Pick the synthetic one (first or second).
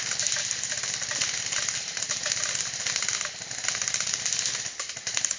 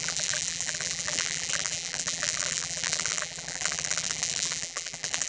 second